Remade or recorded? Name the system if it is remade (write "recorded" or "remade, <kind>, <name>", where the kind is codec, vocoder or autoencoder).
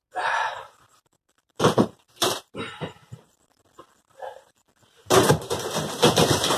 remade, vocoder, BigVGAN v2